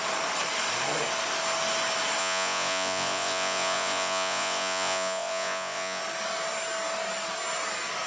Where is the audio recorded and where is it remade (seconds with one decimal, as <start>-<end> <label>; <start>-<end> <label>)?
0.0-2.2 recorded; 2.2-6.0 remade; 6.0-8.1 recorded